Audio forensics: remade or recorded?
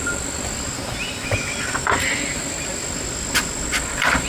recorded